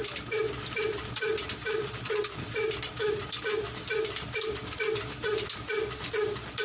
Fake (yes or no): no